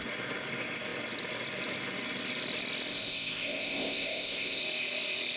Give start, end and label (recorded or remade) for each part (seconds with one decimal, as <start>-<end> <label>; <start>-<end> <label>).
0.0-2.9 recorded; 2.9-4.6 remade; 4.6-5.4 recorded